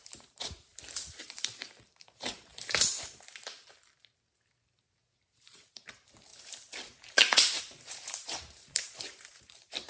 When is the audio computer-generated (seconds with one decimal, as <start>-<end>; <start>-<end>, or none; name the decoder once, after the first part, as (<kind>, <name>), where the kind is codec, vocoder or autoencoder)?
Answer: 0.0-0.7 (vocoder, BigVGAN v2); 1.2-2.5; 5.3-6.3; 7.6-9.9